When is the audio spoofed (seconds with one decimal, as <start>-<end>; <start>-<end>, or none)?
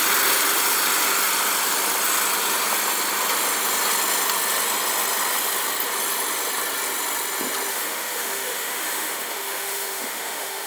7.7-10.7